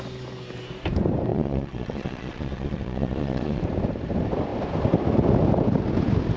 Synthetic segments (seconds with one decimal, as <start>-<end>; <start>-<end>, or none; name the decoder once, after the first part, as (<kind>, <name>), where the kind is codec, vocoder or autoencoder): 1.3-3.6 (vocoder, Vocos)